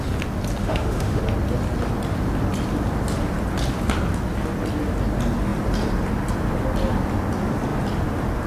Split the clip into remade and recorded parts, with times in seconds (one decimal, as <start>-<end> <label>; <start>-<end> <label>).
0.0-0.6 recorded; 0.6-1.2 remade; 1.2-8.5 recorded